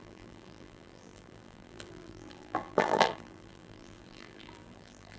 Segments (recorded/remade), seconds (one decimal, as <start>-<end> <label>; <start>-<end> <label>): 0.0-5.2 remade